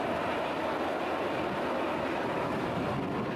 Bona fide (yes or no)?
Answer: yes